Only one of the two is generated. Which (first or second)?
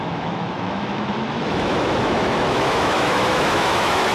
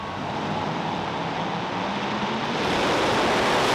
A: first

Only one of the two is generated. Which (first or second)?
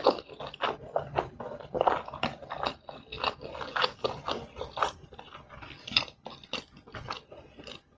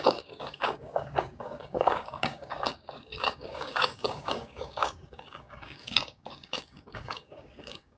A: second